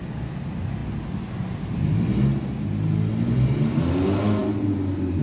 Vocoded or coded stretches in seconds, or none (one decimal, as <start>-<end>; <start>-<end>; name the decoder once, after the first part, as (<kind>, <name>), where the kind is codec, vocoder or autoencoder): none